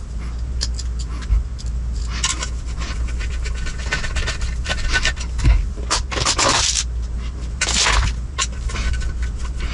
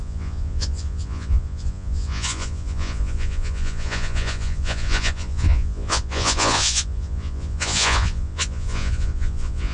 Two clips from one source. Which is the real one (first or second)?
first